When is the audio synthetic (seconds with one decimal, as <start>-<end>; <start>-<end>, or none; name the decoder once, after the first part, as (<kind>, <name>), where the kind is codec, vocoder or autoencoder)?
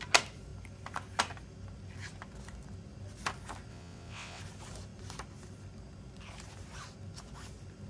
3.7-4.4 (vocoder, WaveNeXt)